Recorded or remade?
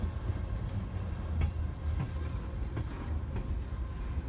recorded